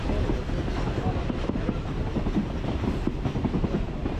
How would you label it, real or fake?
real